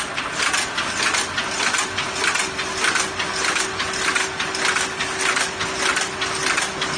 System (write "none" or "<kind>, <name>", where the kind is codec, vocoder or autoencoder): none